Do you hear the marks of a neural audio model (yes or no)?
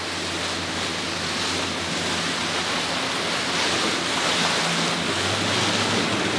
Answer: no